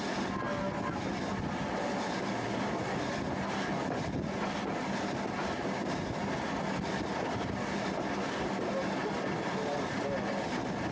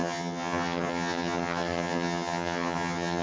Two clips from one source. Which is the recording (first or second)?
first